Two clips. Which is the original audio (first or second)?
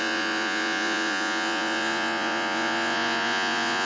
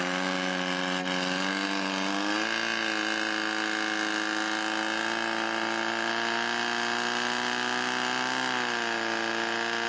second